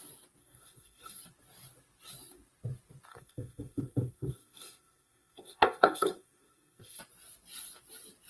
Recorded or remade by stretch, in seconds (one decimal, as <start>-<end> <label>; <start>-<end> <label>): 0.0-0.4 recorded; 0.4-1.2 remade; 1.2-3.1 recorded; 3.1-7.0 remade; 7.0-8.3 recorded

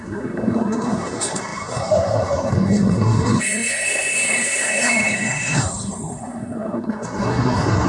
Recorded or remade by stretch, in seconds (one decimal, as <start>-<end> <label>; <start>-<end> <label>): 0.0-7.9 remade

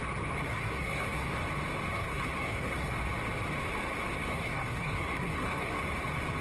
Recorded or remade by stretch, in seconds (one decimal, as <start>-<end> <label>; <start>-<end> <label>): 0.0-0.4 recorded; 0.4-1.4 remade; 1.4-1.9 recorded; 1.9-2.9 remade; 2.9-4.3 recorded; 4.3-5.7 remade; 5.7-6.4 recorded

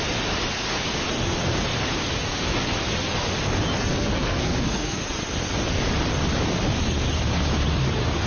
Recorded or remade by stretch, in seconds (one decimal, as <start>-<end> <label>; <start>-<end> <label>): 0.0-3.9 recorded; 3.9-5.0 remade; 5.0-8.3 recorded

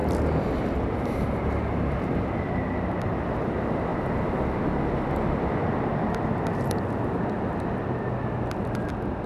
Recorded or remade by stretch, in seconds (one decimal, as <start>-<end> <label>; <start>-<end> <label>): 0.0-9.3 recorded

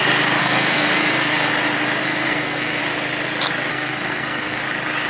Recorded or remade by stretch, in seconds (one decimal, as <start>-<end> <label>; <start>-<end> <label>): 0.0-0.4 recorded; 0.4-1.5 remade; 1.5-2.0 recorded; 2.0-2.8 remade; 2.8-3.7 recorded; 3.7-4.6 remade; 4.6-5.1 recorded

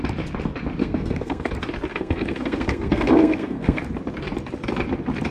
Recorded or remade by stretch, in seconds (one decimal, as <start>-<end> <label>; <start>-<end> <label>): 0.0-0.8 recorded; 0.8-1.5 remade; 1.5-1.9 recorded; 1.9-3.8 remade; 3.8-5.3 recorded